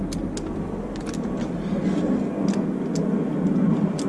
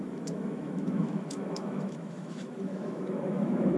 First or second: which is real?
first